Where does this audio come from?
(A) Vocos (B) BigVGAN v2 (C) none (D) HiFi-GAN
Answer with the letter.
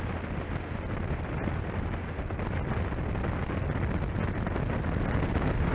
C